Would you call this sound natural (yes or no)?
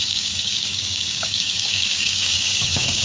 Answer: no